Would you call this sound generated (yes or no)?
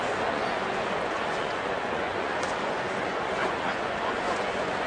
yes